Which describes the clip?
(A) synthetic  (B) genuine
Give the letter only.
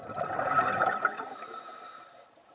B